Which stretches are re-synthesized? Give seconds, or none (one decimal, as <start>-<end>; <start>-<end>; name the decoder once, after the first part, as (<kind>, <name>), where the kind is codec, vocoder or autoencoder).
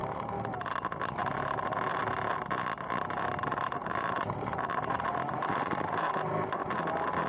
3.8-6.1 (vocoder, BigVGAN v2)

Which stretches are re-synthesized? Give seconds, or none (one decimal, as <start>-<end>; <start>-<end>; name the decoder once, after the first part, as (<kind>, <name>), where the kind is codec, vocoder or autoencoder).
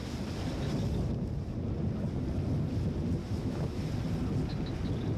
3.2-3.9 (autoencoder, DAC-VAE)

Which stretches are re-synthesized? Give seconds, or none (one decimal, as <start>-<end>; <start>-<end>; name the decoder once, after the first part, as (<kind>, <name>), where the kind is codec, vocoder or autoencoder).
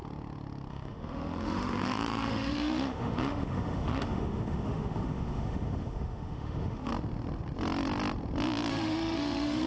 0.7-6.9 (autoencoder, DAC-VAE); 8.7-9.7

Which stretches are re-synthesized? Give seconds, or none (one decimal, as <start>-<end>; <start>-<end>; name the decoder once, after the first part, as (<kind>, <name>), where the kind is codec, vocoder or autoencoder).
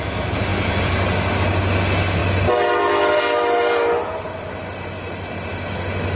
none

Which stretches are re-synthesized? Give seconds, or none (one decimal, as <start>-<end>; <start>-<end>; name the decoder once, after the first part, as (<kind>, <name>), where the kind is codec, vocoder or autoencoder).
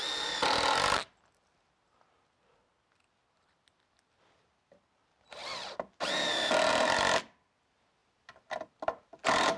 none